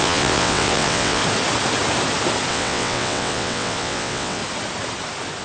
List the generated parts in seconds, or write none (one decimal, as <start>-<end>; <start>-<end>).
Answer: 0.0-1.2; 2.5-4.4